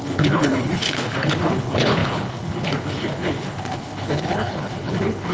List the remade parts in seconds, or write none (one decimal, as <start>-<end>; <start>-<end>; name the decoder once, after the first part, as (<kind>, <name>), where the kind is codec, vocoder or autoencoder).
0.0-5.3 (codec, HILCodec)